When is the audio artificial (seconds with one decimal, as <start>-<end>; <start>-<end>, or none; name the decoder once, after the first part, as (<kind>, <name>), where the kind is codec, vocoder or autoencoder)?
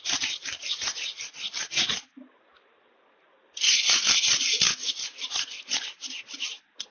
0.0-1.1 (vocoder, BigVGAN v2); 1.7-6.9